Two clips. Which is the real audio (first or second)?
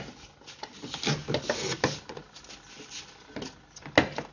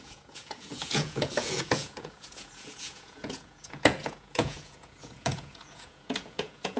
first